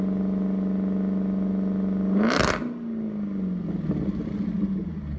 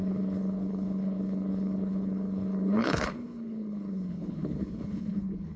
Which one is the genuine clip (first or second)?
first